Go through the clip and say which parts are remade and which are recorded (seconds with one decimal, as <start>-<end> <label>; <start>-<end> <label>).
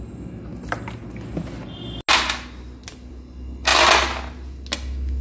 0.0-5.2 recorded